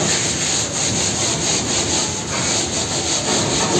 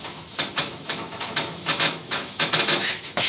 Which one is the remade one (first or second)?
second